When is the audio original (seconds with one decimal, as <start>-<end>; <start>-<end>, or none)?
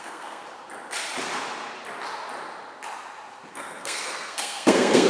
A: 0.4-3.5